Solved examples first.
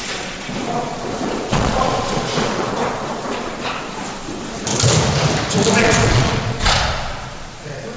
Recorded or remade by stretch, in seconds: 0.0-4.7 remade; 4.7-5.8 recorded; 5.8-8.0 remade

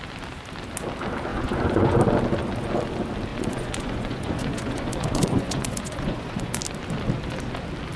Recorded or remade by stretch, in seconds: 0.0-1.3 recorded; 1.3-2.0 remade; 2.0-3.3 recorded; 3.3-6.6 remade; 6.6-8.0 recorded

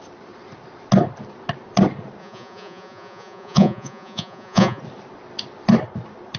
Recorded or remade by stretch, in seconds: 0.0-2.2 recorded; 2.2-4.8 remade; 4.8-6.4 recorded

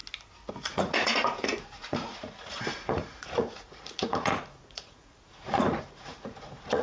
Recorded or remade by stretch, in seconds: 0.0-0.5 recorded; 0.5-6.8 remade

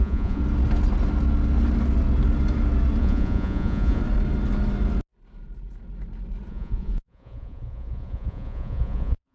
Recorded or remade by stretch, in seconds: 0.0-0.4 remade; 0.4-3.0 recorded; 3.0-4.0 remade; 4.0-6.5 recorded; 6.5-9.3 remade

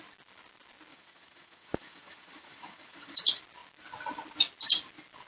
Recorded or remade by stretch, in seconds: 0.0-0.9 recorded; 0.9-3.2 remade; 3.2-5.3 recorded